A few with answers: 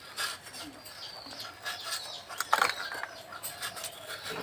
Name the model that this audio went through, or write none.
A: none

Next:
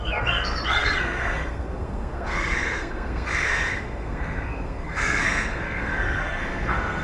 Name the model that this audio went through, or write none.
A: codec, SNAC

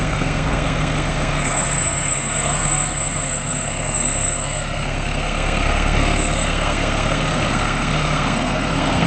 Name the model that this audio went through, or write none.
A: codec, SNAC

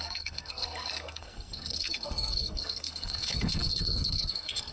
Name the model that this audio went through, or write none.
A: codec, SNAC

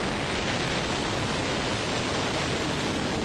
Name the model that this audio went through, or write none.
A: none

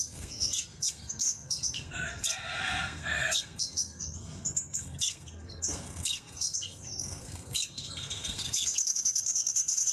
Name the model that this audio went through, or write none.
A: codec, SNAC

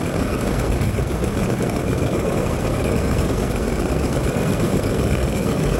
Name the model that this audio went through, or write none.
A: codec, SNAC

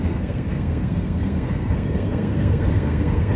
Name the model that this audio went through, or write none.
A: codec, SNAC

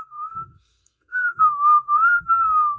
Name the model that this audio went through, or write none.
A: codec, SNAC